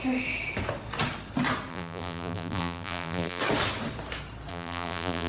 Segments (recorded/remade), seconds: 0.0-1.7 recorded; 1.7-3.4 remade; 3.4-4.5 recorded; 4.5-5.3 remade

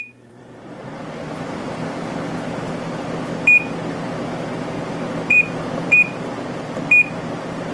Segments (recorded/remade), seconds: 0.0-1.0 remade; 1.0-5.3 recorded; 5.3-6.1 remade; 6.1-7.7 recorded

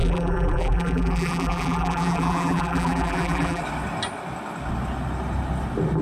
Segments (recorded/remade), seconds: 0.0-3.6 remade; 3.6-6.0 recorded

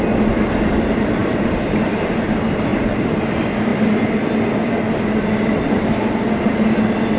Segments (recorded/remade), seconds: 0.0-1.2 recorded; 1.2-2.1 remade; 2.1-2.7 recorded; 2.7-3.3 remade; 3.3-7.2 recorded

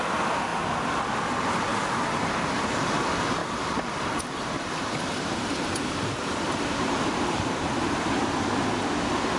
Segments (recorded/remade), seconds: 0.0-1.7 recorded; 1.7-2.9 remade; 2.9-3.4 recorded; 3.4-7.9 remade; 7.9-9.4 recorded